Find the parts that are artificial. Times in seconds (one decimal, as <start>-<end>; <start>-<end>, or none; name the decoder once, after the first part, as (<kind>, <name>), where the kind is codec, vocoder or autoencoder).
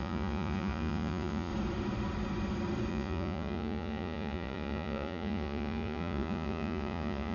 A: 0.0-1.5 (vocoder, Vocos); 2.9-7.3